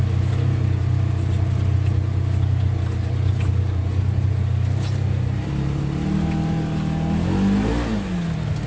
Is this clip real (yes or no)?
yes